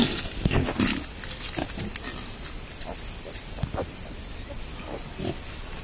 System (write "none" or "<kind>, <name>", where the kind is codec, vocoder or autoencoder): none